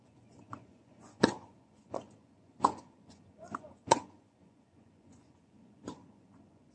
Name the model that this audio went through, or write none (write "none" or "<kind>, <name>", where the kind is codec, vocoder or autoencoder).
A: vocoder, Vocos